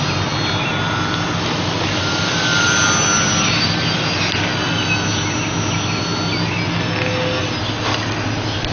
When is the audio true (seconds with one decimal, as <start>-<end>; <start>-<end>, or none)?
0.0-8.7